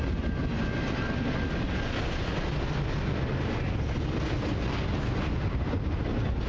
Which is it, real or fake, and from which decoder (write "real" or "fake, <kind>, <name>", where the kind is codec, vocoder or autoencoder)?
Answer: real